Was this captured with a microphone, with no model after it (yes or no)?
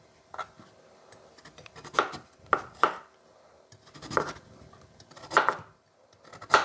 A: yes